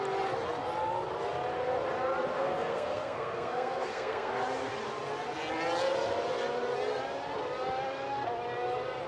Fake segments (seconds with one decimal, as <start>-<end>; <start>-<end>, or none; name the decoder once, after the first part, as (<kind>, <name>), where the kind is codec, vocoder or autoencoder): 2.3-4.3 (codec, SNAC)